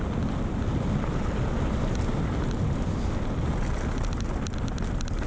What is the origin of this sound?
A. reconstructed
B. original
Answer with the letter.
B